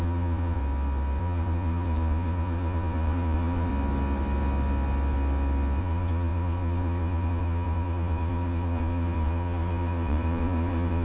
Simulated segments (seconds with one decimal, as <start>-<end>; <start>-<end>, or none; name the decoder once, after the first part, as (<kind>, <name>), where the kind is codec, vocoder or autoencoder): 0.0-0.6 (vocoder, Vocos); 1.2-3.7; 5.8-11.0